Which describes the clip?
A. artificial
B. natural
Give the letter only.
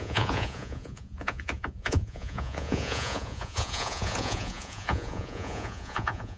A